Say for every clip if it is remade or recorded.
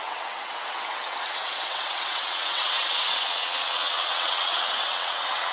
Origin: remade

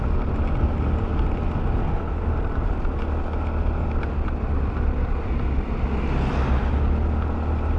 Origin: recorded